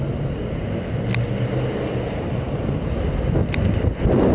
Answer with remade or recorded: recorded